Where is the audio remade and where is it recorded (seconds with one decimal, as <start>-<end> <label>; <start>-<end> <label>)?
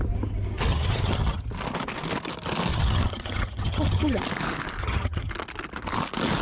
0.0-0.7 recorded; 0.7-1.5 remade; 1.5-2.7 recorded; 2.7-4.2 remade; 4.2-4.8 recorded; 4.8-5.3 remade; 5.3-6.4 recorded